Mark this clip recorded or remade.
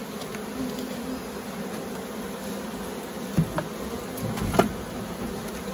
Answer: recorded